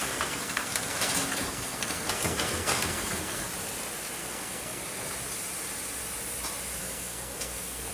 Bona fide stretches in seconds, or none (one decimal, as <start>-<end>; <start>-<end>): 3.5-4.2; 4.8-6.8

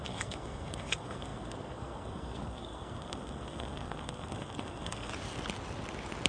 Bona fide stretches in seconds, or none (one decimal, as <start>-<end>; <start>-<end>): 5.1-6.3

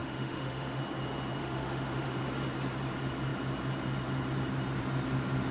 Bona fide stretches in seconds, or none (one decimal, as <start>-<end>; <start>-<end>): 0.8-1.4; 2.2-5.5